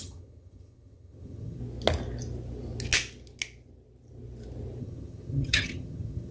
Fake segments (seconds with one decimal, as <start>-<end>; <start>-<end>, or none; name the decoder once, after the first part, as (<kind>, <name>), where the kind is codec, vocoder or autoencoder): 0.0-1.6 (vocoder, HiFi-GAN); 4.8-6.3